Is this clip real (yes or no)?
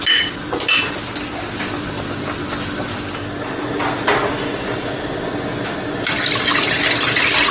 yes